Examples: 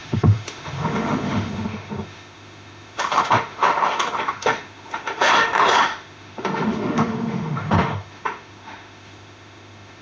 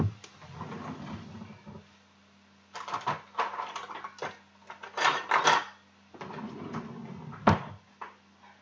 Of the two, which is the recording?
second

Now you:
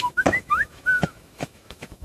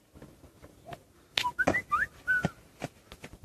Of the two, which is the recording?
second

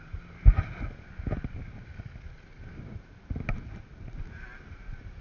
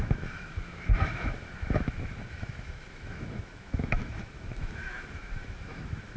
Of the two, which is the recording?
first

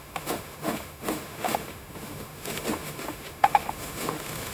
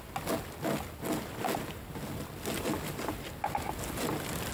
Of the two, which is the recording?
second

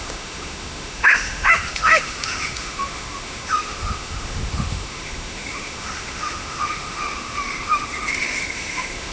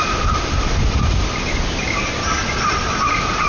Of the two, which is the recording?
second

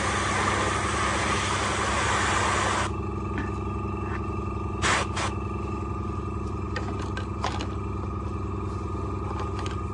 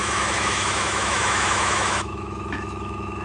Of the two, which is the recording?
first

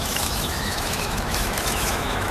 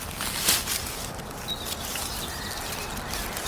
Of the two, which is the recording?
second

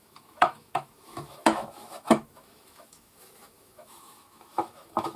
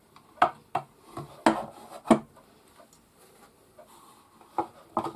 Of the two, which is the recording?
second